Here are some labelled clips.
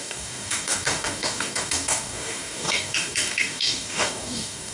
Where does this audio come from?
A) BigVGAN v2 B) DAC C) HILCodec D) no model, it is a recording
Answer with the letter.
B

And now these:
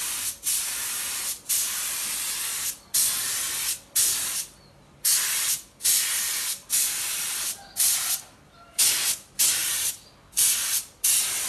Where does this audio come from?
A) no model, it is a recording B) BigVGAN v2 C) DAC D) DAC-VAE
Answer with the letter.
A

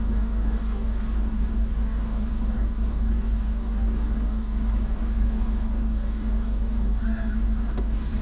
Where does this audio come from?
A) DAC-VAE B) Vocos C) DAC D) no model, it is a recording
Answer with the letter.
C